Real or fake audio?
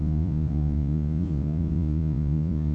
fake